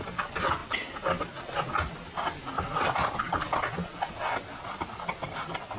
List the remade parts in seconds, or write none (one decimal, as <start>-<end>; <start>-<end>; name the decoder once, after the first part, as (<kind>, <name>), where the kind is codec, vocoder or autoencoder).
none